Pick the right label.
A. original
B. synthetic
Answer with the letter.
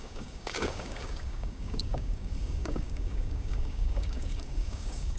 B